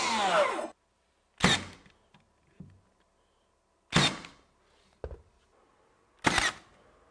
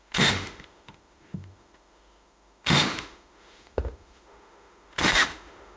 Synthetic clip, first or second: second